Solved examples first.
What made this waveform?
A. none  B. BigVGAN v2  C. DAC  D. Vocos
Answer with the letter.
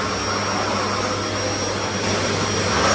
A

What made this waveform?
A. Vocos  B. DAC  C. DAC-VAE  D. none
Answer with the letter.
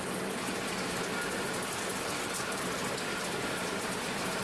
D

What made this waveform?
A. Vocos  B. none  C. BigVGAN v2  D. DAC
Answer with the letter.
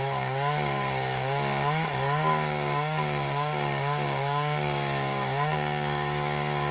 D